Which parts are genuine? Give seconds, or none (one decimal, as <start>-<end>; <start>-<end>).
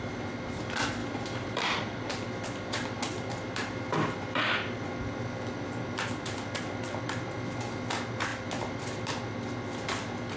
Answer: 0.0-1.0; 5.0-8.3